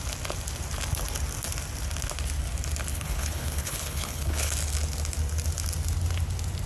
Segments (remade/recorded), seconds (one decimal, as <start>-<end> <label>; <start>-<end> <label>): 0.0-2.9 recorded; 2.9-4.5 remade; 4.5-6.7 recorded